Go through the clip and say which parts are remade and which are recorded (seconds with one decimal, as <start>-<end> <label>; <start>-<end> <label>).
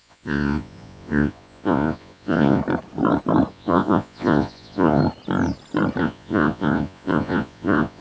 0.0-2.6 remade; 2.6-3.5 recorded; 3.5-5.0 remade; 5.0-6.0 recorded; 6.0-8.0 remade